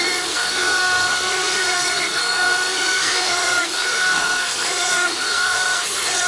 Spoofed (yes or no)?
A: yes